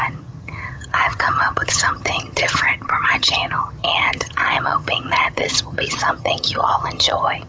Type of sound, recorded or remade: remade